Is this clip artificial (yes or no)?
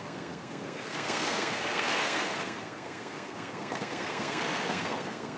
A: yes